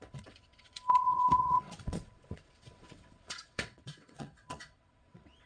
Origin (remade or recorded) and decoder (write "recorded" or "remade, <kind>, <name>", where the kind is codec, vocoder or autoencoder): remade, vocoder, WaveNeXt